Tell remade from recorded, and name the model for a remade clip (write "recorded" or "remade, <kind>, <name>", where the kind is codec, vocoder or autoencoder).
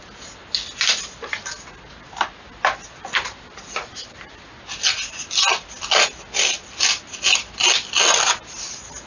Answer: recorded